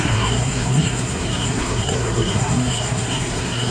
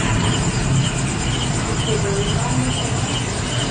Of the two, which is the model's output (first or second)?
first